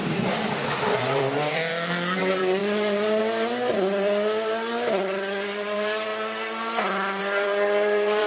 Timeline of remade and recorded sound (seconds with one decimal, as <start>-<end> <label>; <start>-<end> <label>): 0.0-1.7 remade; 1.7-2.2 recorded; 2.2-2.6 remade; 2.6-3.2 recorded; 3.2-6.1 remade; 6.1-7.2 recorded; 7.2-8.3 remade